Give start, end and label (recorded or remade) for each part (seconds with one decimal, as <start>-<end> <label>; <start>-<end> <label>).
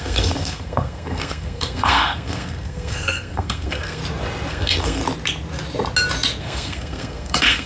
0.0-4.0 remade; 4.0-4.5 recorded; 4.5-5.0 remade; 5.0-6.4 recorded; 6.4-7.7 remade